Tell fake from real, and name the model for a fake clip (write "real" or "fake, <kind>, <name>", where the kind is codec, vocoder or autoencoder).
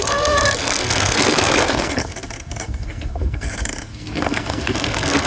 fake, codec, SNAC